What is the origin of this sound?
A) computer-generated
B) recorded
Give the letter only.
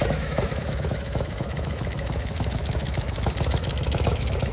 A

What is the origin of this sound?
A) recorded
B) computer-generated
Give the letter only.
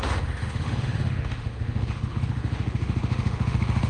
B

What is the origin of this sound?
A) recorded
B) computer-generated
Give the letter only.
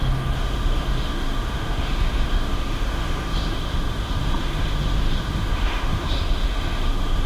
B